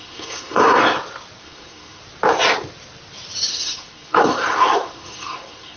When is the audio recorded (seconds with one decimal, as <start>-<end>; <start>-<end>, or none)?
0.8-1.4; 2.0-3.5